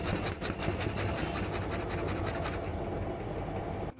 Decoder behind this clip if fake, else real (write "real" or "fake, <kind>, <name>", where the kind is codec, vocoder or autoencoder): real